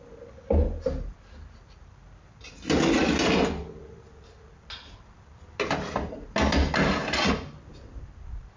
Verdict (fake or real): real